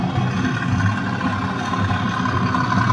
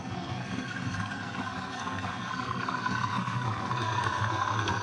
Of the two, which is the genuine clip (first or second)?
first